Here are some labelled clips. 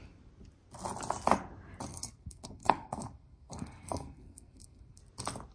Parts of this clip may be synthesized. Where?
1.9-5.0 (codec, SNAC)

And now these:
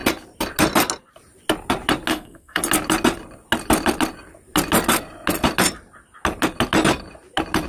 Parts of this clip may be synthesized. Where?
2.1-2.6 (codec, SNAC)

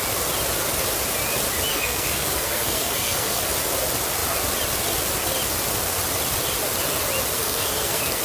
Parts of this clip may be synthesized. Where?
1.7-3.4 (codec, SNAC); 7.3-8.2

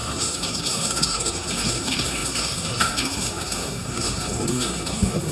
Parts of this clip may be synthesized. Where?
0.0-5.3 (codec, SNAC)

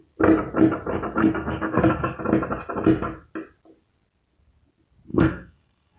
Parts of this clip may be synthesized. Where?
1.2-2.2 (codec, SNAC); 5.1-6.0

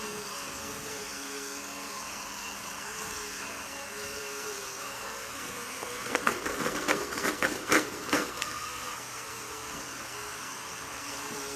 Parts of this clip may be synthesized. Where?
0.0-11.6 (codec, SNAC)

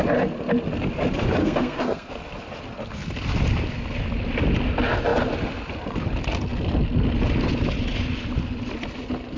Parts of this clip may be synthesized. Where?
1.4-2.1 (codec, SNAC)

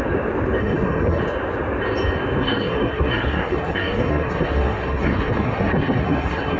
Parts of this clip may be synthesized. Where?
0.6-1.2 (codec, SNAC); 2.4-6.6